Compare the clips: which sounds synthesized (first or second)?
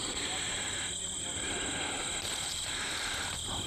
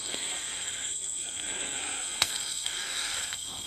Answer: second